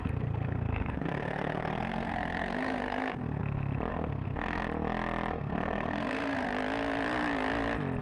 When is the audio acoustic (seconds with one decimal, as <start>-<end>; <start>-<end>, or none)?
3.4-3.9; 4.6-5.3; 6.5-8.0